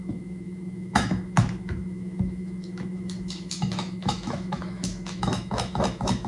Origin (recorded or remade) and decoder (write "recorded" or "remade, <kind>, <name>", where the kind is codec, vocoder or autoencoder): remade, autoencoder, DAC-VAE